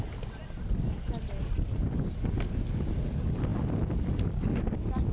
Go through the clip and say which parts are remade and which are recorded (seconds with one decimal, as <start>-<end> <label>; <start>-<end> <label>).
0.0-5.1 recorded